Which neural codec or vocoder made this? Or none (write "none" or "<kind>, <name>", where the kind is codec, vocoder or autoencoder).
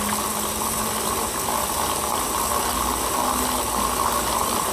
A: none